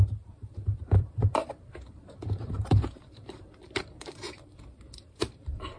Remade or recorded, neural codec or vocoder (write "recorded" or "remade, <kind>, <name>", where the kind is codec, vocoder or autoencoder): remade, vocoder, BigVGAN v2